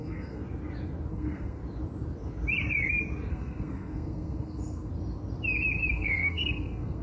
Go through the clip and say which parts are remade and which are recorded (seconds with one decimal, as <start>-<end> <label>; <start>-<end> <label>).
0.0-0.4 remade; 0.4-1.1 recorded; 1.1-1.6 remade; 1.6-3.3 recorded; 3.3-4.9 remade; 4.9-5.9 recorded; 5.9-7.0 remade